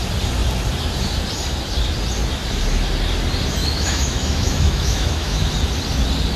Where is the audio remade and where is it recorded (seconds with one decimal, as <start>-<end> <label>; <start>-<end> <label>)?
0.0-3.6 recorded; 3.6-5.5 remade; 5.5-6.4 recorded